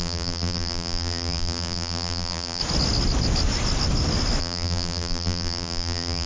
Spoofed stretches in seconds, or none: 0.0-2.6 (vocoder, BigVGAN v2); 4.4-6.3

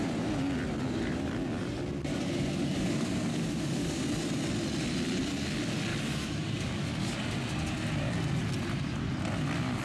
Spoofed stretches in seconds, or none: 2.1-4.0 (codec, DAC); 5.9-7.2

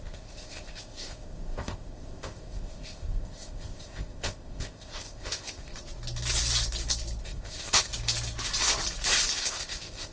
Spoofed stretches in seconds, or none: 0.0-5.7 (codec, ZipCodec); 7.2-7.9; 9.3-10.1